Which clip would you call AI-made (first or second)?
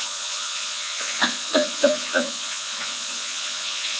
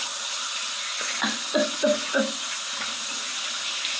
first